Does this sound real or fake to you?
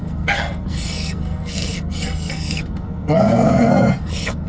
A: fake